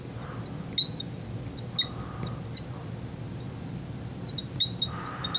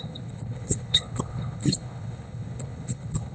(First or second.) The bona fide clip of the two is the first